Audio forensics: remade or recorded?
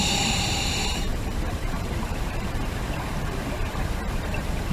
remade